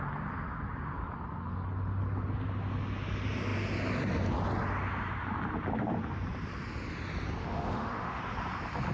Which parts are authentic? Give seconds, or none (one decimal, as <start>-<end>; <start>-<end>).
0.0-7.4; 8.2-8.9